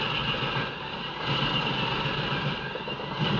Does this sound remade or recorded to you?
recorded